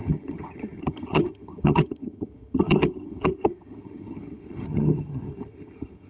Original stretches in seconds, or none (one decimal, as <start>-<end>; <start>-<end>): none